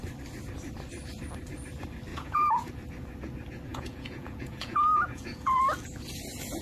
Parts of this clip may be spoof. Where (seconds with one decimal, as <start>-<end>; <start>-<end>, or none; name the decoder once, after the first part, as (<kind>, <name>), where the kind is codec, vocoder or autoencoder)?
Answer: 2.1-2.7 (vocoder, Vocos); 3.7-5.6